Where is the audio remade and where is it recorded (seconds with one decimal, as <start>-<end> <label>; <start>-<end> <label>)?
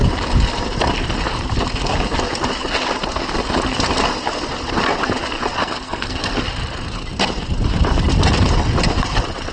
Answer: 0.0-5.6 recorded; 5.6-6.4 remade; 6.4-9.5 recorded